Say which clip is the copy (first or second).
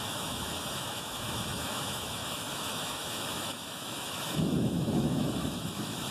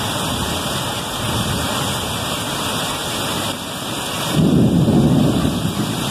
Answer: first